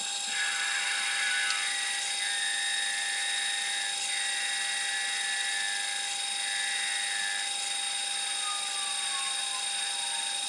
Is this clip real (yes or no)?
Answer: yes